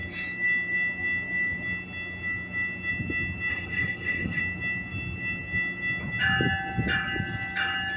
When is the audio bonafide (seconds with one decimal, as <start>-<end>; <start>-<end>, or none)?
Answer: 0.0-3.5; 4.4-8.0